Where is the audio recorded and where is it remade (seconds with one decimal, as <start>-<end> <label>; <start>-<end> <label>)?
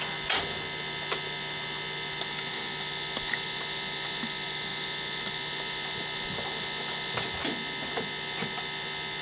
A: 0.0-9.2 recorded